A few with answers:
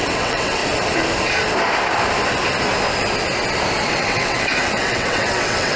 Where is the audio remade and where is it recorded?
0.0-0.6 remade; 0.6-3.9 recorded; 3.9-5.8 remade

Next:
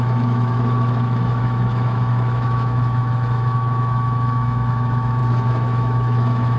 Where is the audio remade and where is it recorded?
0.0-6.6 remade

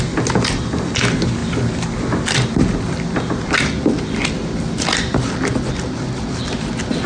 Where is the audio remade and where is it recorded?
0.0-7.1 recorded

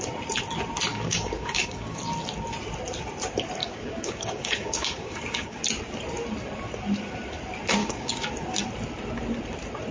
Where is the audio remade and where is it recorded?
0.0-0.9 recorded; 0.9-2.0 remade; 2.0-3.6 recorded; 3.6-5.6 remade; 5.6-7.8 recorded; 7.8-8.3 remade; 8.3-9.9 recorded

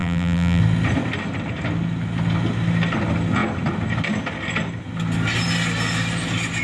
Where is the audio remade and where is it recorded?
0.0-0.6 remade; 0.6-6.6 recorded

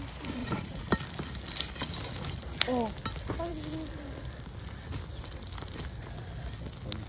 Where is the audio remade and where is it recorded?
0.0-0.4 recorded; 0.4-0.9 remade; 0.9-7.1 recorded

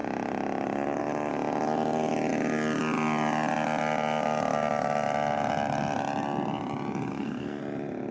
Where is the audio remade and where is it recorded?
0.0-7.1 recorded; 7.1-7.6 remade; 7.6-8.1 recorded